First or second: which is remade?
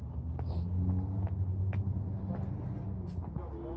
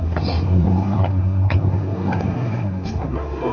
second